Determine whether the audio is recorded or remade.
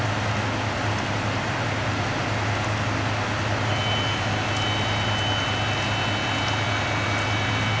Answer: recorded